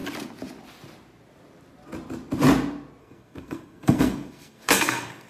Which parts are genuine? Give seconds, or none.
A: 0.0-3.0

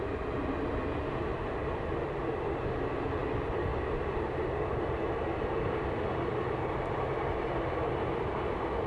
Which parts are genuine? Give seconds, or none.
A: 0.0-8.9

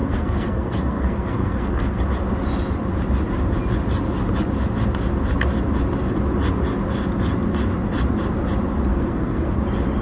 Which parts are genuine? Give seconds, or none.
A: 2.0-8.9; 9.5-10.0